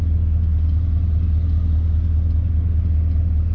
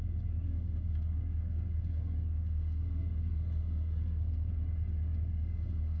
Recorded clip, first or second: first